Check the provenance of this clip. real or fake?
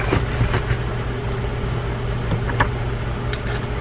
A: real